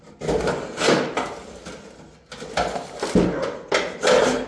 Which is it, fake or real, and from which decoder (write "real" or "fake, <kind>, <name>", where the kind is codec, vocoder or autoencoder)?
real